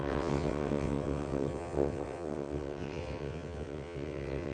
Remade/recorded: remade